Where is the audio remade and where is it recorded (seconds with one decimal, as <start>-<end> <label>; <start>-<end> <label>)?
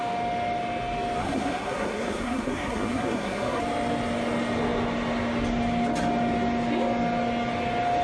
0.0-1.2 recorded; 1.2-3.6 remade; 3.6-8.0 recorded